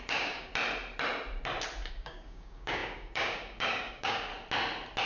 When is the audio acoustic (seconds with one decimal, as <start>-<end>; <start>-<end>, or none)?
0.5-1.9; 4.3-5.0